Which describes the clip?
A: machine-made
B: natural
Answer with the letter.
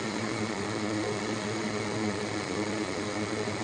A